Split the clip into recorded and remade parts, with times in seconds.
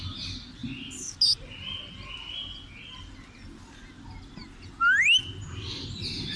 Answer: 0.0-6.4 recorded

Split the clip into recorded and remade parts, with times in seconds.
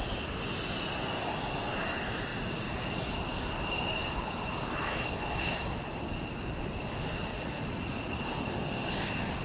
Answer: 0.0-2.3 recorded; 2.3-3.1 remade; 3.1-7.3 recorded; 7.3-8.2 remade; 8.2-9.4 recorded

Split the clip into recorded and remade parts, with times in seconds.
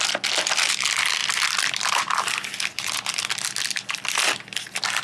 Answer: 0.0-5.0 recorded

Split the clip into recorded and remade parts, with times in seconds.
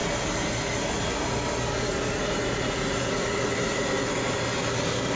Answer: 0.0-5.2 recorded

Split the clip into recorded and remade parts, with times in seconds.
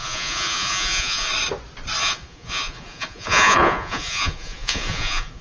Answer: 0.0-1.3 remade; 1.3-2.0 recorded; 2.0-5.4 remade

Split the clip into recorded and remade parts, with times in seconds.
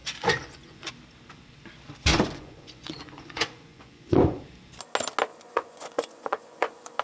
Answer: 0.0-0.9 remade; 0.9-2.1 recorded; 2.1-4.4 remade; 4.4-5.3 recorded; 5.3-7.0 remade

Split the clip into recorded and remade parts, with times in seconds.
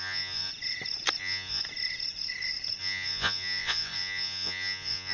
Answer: 0.0-0.5 remade; 0.5-1.2 recorded; 1.2-1.6 remade; 1.6-2.8 recorded; 2.8-5.1 remade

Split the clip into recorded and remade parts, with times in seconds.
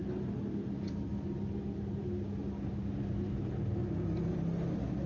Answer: 0.0-5.1 recorded